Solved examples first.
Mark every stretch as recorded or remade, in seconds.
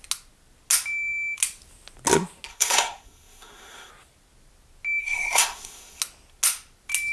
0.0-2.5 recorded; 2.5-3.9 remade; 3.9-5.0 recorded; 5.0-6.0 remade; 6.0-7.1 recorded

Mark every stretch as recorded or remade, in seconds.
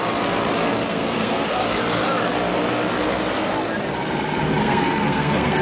0.0-0.9 recorded; 0.9-1.6 remade; 1.6-4.6 recorded; 4.6-5.6 remade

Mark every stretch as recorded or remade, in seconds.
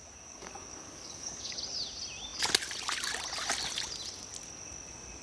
0.0-1.5 remade; 1.5-5.2 recorded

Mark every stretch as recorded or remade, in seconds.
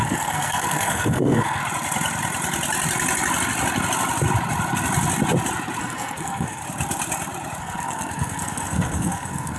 0.0-1.6 remade; 1.6-5.8 recorded; 5.8-6.6 remade; 6.6-7.6 recorded; 7.6-9.6 remade